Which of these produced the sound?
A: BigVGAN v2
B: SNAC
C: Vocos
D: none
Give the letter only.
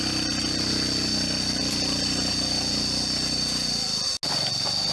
D